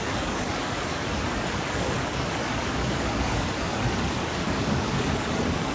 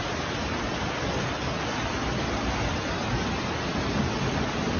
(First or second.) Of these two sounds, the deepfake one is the first